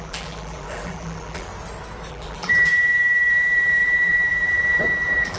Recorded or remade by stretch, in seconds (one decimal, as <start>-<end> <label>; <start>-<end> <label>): 0.0-1.5 remade; 1.5-2.1 recorded; 2.1-2.7 remade; 2.7-3.3 recorded; 3.3-5.4 remade